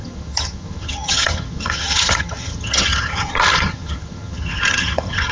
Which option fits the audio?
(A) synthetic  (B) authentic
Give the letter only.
A